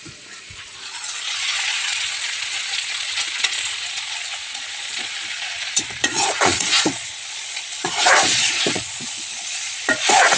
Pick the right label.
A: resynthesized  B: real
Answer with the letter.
A